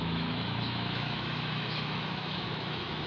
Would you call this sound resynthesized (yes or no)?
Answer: yes